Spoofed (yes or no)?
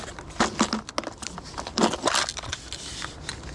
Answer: no